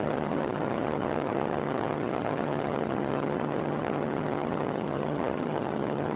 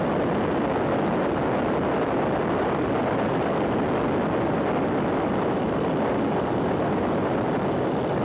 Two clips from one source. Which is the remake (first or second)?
first